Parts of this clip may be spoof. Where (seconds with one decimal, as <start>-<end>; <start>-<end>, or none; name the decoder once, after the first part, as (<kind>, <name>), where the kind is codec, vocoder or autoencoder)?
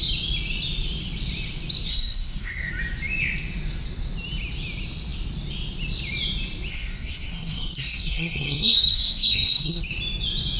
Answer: 1.9-2.7 (codec, SNAC); 6.7-9.8